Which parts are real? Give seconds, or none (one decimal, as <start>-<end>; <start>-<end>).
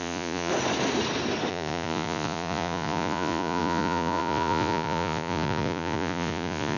0.5-1.5